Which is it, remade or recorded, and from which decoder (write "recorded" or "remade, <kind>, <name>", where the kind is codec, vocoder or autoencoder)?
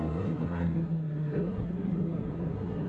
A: remade, codec, SNAC